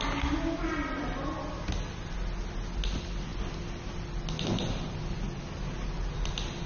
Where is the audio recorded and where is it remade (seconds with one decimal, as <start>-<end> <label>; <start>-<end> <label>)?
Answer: 0.0-6.7 recorded